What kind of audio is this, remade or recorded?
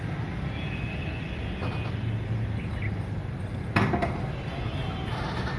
recorded